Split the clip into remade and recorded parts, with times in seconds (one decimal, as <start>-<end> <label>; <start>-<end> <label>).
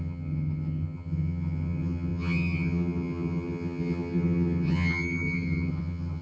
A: 0.0-6.2 remade